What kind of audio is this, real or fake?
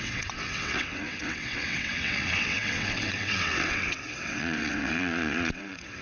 fake